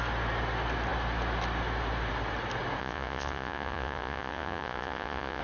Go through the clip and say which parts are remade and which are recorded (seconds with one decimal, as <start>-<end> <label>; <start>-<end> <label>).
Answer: 0.0-2.8 recorded; 2.8-5.4 remade